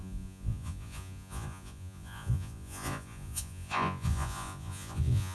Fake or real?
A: fake